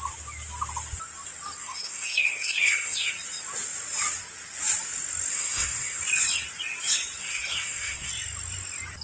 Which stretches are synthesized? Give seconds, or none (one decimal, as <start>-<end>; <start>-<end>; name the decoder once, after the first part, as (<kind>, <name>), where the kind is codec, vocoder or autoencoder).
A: 1.6-3.1 (codec, SNAC); 5.3-6.0; 7.2-8.1